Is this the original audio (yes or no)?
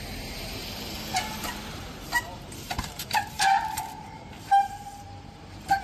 no